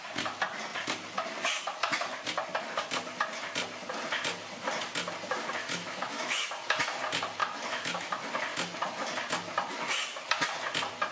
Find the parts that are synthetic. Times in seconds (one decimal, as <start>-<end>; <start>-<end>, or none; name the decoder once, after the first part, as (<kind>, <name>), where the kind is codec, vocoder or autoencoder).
5.6-6.5 (autoencoder, DAC-VAE); 7.4-8.1